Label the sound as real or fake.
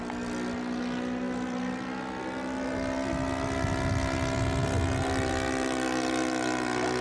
real